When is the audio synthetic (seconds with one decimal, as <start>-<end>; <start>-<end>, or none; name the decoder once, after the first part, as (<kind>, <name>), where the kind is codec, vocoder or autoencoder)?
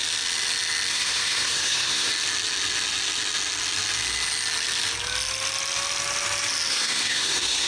0.9-2.1 (codec, SNAC); 6.7-7.7